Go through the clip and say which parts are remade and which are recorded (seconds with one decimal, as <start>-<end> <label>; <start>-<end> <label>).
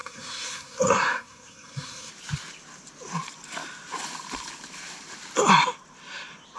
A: 0.0-2.1 remade; 2.1-6.6 recorded